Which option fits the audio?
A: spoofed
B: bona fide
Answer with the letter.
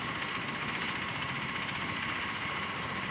B